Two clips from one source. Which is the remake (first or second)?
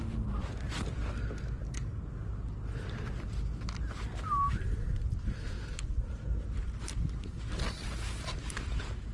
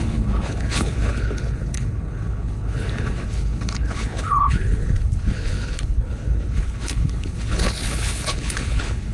second